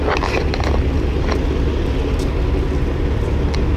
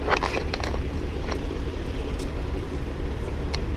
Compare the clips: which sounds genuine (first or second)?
first